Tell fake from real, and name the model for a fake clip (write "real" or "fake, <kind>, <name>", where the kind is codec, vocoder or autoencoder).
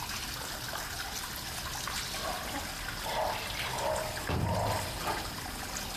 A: real